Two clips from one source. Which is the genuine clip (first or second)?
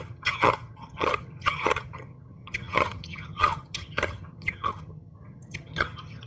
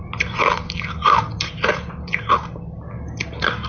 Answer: second